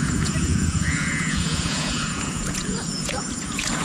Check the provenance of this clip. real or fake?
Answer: fake